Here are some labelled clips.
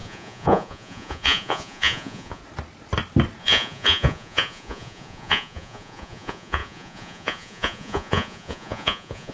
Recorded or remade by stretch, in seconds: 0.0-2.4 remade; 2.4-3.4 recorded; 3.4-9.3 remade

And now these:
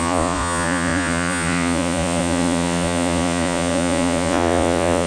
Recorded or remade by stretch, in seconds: 0.0-5.1 remade

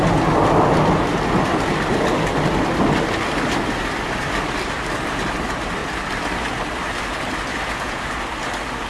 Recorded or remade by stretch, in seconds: 0.0-7.5 recorded; 7.5-8.1 remade; 8.1-8.9 recorded